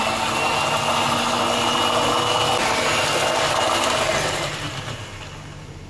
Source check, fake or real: real